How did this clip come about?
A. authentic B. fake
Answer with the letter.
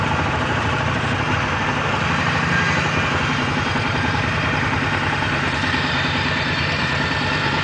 B